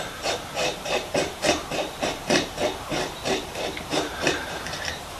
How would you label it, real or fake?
fake